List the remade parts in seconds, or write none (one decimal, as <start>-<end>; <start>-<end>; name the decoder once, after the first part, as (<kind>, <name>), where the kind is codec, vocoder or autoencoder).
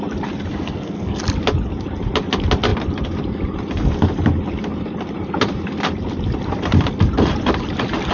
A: 0.5-1.2 (codec, SNAC)